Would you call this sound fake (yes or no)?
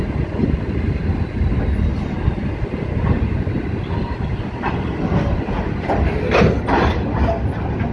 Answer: no